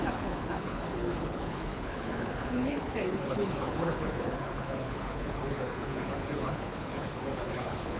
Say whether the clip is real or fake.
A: fake